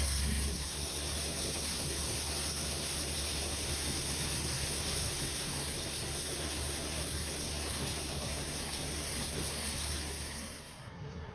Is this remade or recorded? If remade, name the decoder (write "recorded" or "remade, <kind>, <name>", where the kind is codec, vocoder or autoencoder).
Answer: remade, codec, SNAC